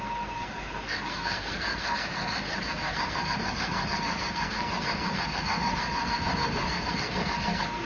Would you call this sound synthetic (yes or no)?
yes